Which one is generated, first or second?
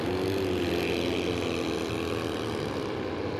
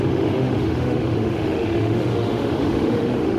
second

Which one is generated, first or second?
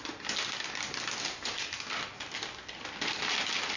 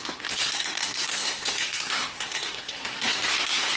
second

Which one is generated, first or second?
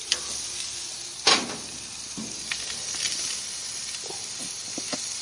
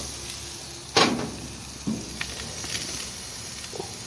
first